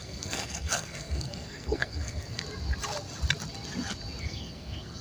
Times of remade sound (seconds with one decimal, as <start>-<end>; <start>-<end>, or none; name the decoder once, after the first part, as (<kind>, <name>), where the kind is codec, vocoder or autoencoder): 0.0-2.4 (codec, SNAC); 4.2-5.0